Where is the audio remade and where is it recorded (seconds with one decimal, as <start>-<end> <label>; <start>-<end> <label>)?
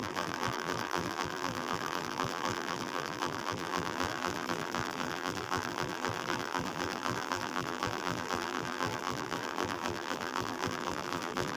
0.0-11.6 remade